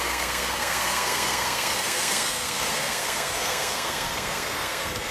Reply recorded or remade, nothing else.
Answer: remade